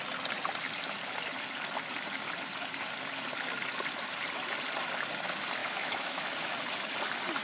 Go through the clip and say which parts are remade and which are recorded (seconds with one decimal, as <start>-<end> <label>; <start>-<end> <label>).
0.0-5.6 recorded; 5.6-6.2 remade; 6.2-7.4 recorded